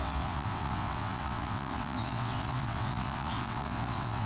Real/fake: fake